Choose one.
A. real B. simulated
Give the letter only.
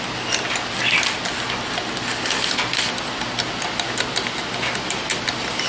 A